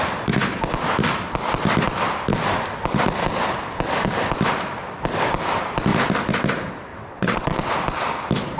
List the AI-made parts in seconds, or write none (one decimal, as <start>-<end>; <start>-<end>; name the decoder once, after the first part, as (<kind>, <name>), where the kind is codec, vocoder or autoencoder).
6.9-7.7 (vocoder, WaveNeXt)